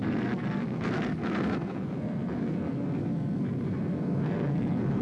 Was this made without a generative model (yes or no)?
no